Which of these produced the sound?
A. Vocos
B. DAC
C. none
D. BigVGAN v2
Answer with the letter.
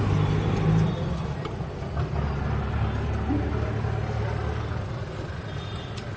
C